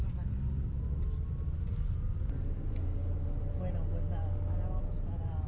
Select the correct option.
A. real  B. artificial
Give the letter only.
A